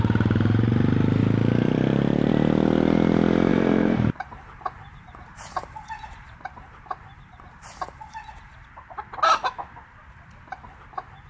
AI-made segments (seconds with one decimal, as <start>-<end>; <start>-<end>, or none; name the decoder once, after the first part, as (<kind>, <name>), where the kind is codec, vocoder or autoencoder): 1.2-2.3 (vocoder, BigVGAN v2); 3.5-8.6